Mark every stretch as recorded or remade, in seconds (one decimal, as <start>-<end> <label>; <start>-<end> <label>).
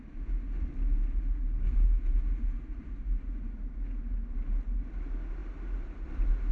0.0-6.5 recorded